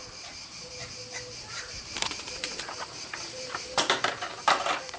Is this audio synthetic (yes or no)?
yes